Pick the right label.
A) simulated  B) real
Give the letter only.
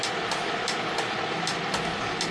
B